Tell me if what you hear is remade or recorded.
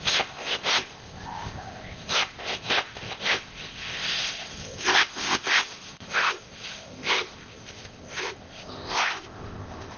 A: remade